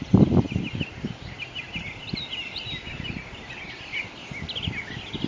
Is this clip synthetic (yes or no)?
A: no